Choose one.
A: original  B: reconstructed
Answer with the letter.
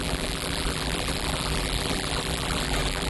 B